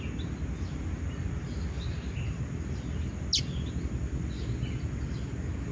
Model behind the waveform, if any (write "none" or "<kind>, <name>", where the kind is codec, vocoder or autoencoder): none